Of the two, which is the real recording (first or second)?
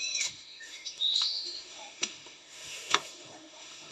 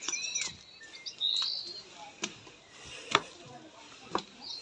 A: second